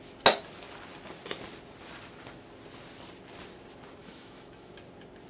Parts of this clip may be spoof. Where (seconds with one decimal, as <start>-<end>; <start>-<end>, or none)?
4.0-4.7